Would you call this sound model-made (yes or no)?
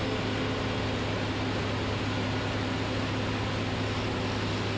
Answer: no